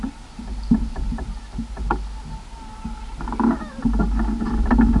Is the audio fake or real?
real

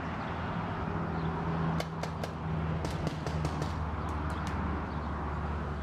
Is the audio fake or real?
real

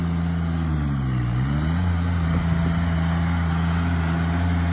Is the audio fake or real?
real